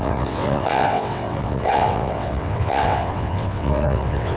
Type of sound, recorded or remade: remade